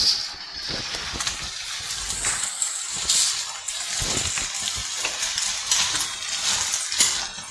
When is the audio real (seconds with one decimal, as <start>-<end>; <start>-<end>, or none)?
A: 0.0-7.5